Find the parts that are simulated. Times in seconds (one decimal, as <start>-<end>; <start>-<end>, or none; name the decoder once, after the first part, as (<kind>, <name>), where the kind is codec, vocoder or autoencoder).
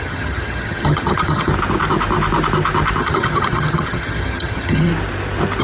0.0-1.5 (vocoder, HiFi-GAN); 3.0-4.9